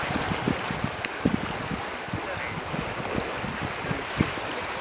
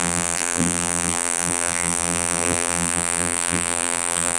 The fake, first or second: second